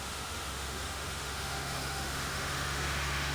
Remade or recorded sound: remade